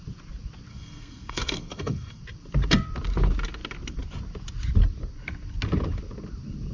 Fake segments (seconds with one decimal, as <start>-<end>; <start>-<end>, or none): 0.7-2.2